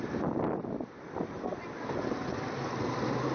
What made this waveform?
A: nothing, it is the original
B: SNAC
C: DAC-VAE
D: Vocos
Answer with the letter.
A